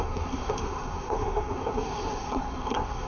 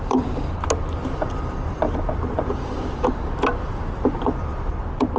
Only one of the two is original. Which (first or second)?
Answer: second